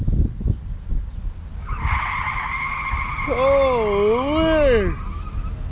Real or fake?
real